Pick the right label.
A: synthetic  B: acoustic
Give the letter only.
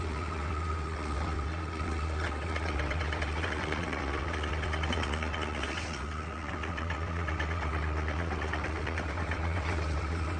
A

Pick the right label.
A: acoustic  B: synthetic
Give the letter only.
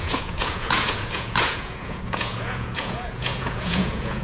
B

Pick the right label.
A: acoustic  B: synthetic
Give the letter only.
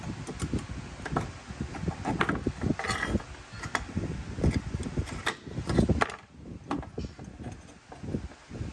A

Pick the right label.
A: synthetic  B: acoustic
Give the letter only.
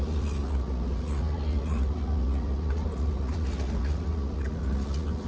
A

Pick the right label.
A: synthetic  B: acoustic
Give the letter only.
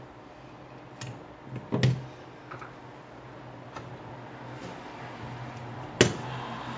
B